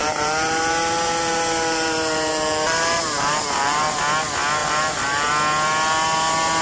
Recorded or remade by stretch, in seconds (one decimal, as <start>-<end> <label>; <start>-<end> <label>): 0.0-4.0 remade; 4.0-4.6 recorded; 4.6-5.3 remade; 5.3-6.6 recorded